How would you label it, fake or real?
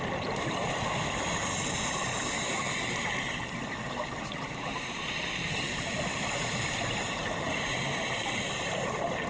real